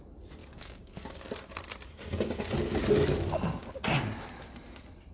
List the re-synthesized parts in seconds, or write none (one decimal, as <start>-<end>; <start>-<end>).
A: 0.4-1.3